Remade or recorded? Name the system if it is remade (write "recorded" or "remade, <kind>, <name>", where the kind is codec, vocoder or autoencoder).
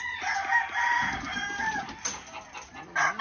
recorded